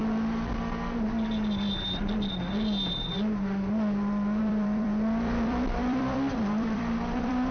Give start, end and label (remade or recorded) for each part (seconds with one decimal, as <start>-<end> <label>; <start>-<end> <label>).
0.0-4.4 recorded; 4.4-7.5 remade